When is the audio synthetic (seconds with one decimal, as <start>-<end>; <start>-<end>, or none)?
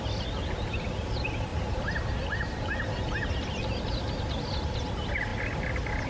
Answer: none